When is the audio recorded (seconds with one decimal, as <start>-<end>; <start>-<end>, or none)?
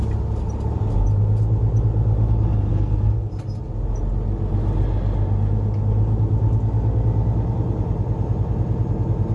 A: 0.0-2.7; 3.3-9.3